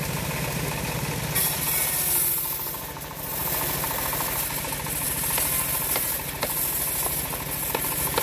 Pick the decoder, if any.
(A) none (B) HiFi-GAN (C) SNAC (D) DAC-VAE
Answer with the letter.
A